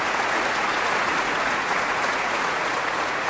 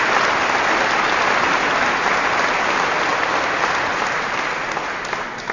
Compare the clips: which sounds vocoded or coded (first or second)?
first